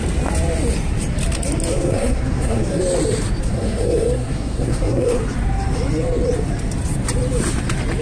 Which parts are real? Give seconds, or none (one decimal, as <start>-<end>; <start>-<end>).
0.0-1.7; 2.8-3.4; 5.2-8.0